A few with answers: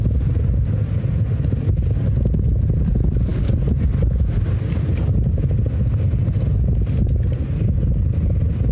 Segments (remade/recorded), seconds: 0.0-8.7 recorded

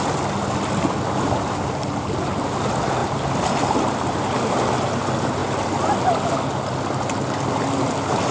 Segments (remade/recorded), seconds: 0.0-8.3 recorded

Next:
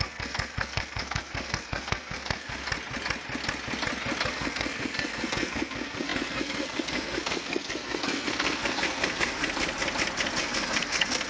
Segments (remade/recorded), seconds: 0.0-2.6 remade; 2.6-4.3 recorded; 4.3-9.4 remade; 9.4-10.4 recorded; 10.4-11.3 remade